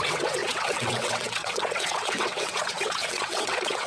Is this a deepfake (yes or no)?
yes